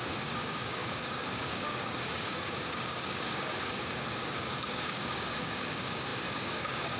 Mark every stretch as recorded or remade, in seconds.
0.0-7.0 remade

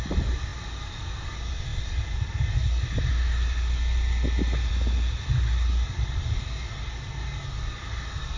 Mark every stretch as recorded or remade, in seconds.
0.0-8.4 recorded